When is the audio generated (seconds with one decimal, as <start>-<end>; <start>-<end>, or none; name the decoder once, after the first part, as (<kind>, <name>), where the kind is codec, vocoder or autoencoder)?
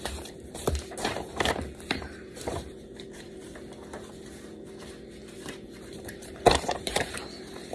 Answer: 0.0-3.4 (vocoder, BigVGAN v2); 5.2-7.7